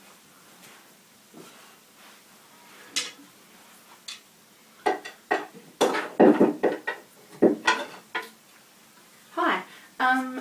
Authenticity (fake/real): real